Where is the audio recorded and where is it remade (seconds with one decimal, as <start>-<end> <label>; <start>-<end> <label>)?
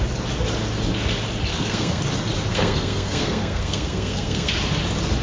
0.0-1.5 recorded; 1.5-2.0 remade; 2.0-2.5 recorded; 2.5-4.5 remade; 4.5-5.2 recorded